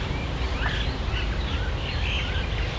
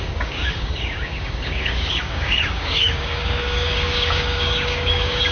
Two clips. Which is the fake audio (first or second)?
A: second